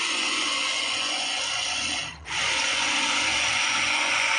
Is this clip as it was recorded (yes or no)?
no